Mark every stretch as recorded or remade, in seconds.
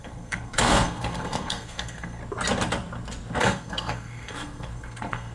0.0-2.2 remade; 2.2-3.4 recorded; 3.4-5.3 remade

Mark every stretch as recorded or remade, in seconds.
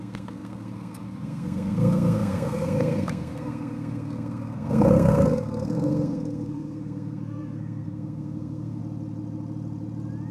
0.0-8.8 remade; 8.8-10.3 recorded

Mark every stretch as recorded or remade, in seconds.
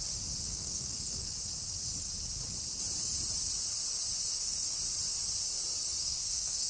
0.0-0.5 recorded; 0.5-1.3 remade; 1.3-4.2 recorded; 4.2-4.8 remade; 4.8-6.0 recorded; 6.0-6.7 remade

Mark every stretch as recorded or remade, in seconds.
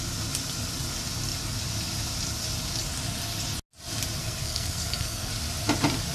0.0-4.2 recorded; 4.2-5.3 remade; 5.3-6.1 recorded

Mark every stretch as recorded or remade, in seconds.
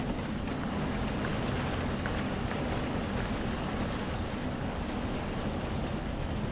0.0-6.5 recorded